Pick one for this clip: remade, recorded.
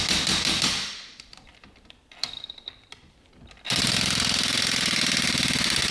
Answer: remade